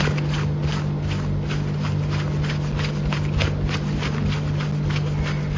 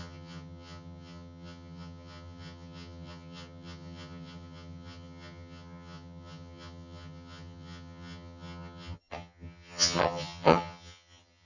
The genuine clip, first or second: first